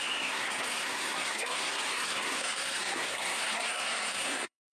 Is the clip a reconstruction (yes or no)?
yes